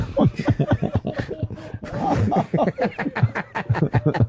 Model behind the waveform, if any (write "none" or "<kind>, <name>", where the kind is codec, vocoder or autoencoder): none